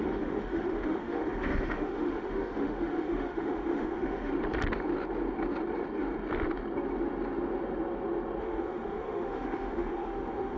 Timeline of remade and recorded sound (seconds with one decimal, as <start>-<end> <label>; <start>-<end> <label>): 0.0-4.3 remade; 4.3-8.4 recorded; 8.4-10.6 remade